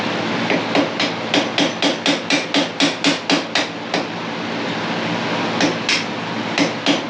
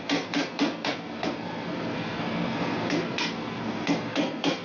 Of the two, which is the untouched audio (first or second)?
first